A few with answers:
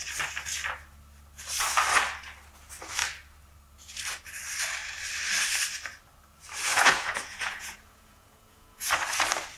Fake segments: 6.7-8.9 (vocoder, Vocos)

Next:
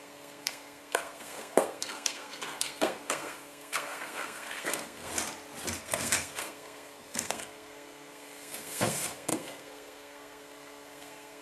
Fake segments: 0.0-5.1 (codec, SNAC); 5.8-11.4

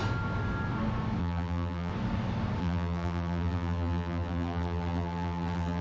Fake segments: 1.2-1.9 (vocoder, BigVGAN v2); 2.6-5.8

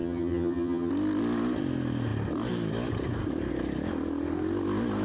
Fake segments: 0.0-0.9 (vocoder, HiFi-GAN)

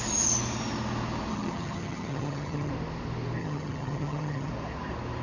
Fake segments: 1.3-2.7 (vocoder, HiFi-GAN); 3.4-4.5

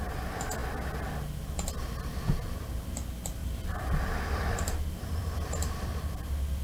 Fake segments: 3.4-5.8 (vocoder, BigVGAN v2)